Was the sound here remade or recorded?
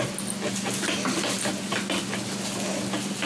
recorded